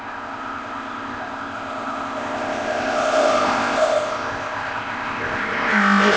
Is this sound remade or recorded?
remade